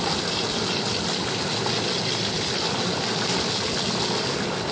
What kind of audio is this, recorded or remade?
recorded